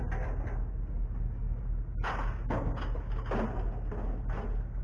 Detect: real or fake real